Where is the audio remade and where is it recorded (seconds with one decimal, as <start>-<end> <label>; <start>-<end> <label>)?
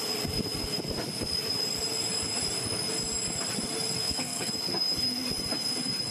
0.0-4.0 recorded; 4.0-4.5 remade; 4.5-6.1 recorded